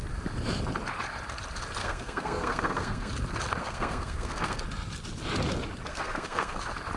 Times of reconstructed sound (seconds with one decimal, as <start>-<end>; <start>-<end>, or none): 1.8-3.1; 3.6-4.6; 5.9-6.6